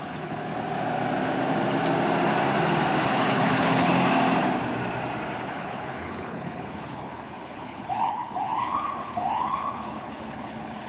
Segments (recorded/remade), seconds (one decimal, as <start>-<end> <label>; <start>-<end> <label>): 0.0-0.5 remade; 0.5-3.0 recorded; 3.0-3.9 remade; 3.9-5.4 recorded; 5.4-10.9 remade